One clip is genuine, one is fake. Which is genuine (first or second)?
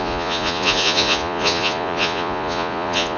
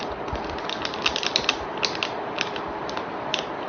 second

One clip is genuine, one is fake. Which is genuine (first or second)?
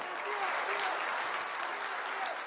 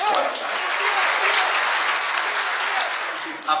first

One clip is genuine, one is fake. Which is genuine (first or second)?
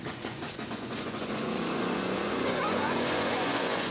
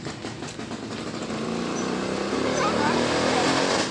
second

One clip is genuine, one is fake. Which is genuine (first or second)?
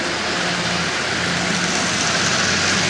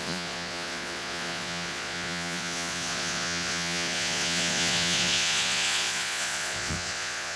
first